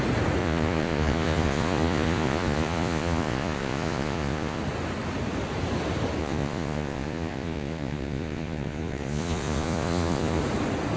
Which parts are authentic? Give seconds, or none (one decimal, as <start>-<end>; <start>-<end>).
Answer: 0.0-0.4; 4.6-6.2; 10.4-11.0